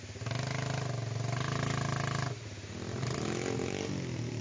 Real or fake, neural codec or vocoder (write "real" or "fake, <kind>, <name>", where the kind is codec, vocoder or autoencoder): real